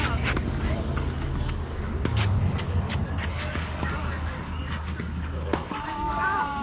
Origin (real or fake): fake